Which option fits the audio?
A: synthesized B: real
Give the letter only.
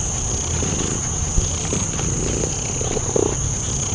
B